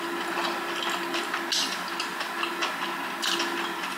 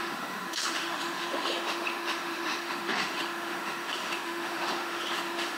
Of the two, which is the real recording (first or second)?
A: first